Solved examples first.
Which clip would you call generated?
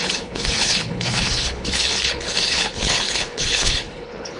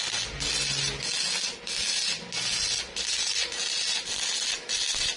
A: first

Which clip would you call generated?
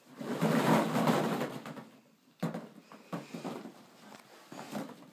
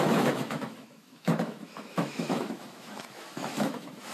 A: second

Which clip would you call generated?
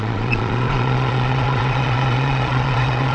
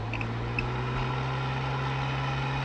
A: first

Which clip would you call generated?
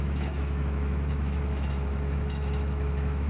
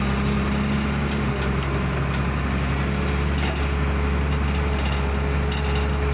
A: first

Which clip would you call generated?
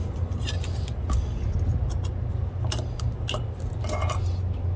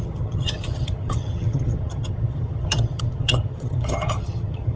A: second